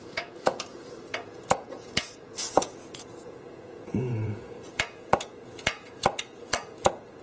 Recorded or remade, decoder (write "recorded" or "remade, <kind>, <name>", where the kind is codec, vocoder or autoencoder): remade, vocoder, Vocos